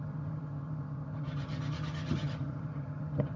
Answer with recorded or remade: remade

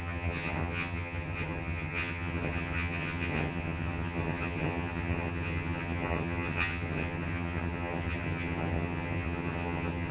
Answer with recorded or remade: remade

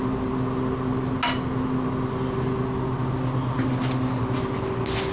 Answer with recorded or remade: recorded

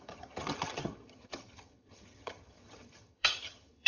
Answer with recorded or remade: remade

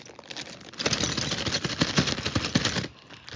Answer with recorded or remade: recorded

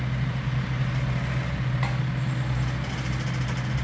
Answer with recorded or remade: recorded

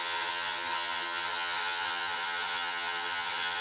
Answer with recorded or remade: remade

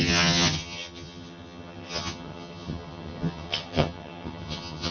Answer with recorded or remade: remade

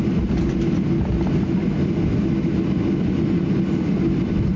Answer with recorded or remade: recorded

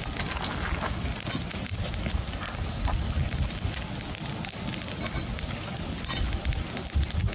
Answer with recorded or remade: recorded